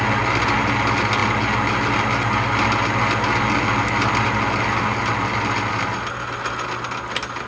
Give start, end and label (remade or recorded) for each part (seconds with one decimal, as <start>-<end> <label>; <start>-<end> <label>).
0.0-7.5 recorded